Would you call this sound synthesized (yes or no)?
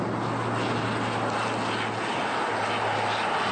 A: no